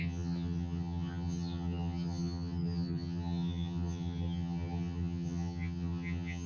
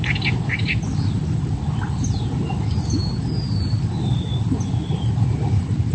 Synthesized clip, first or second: first